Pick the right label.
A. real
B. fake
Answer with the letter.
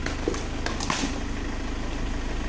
A